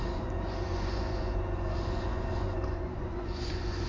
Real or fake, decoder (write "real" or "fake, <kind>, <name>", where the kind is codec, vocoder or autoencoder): fake, vocoder, Vocos